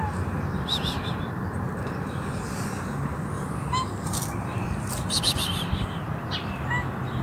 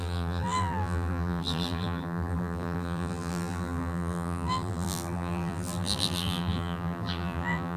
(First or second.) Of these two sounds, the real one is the first